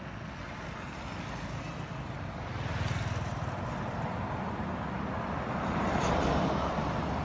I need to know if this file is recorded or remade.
recorded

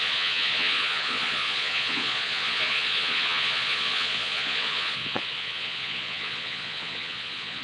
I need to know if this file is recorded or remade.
remade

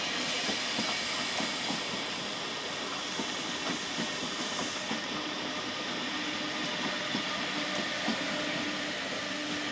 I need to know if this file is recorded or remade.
recorded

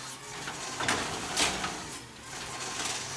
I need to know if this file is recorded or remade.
recorded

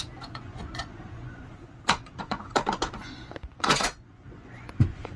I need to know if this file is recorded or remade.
remade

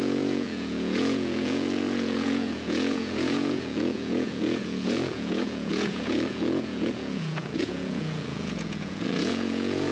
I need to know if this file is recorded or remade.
remade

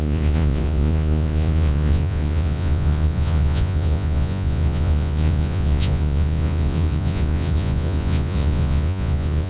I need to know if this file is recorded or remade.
remade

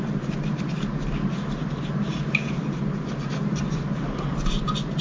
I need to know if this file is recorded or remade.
recorded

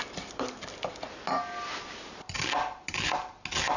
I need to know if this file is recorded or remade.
recorded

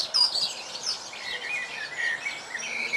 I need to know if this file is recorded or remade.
recorded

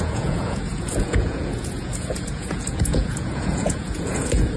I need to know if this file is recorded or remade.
remade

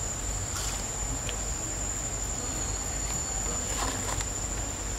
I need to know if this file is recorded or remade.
recorded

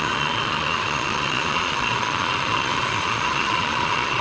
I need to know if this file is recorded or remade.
remade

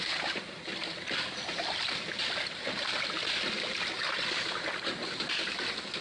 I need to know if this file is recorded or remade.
recorded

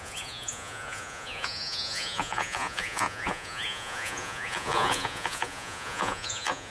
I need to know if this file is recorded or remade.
remade